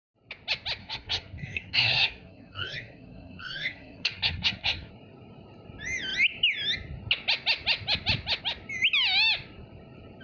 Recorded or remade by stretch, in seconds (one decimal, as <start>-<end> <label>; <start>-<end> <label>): 0.0-0.8 recorded; 0.8-4.9 remade; 4.9-10.2 recorded